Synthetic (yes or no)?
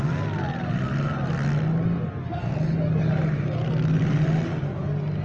no